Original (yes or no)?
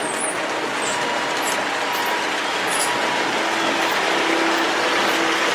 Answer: yes